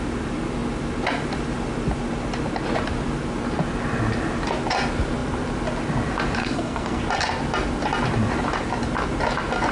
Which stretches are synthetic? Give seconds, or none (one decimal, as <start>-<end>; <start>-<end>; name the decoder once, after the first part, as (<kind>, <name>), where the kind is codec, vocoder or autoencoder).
6.4-7.0 (codec, SNAC)